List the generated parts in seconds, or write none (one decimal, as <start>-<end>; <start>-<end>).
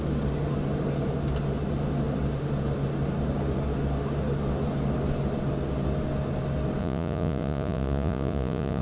6.8-8.8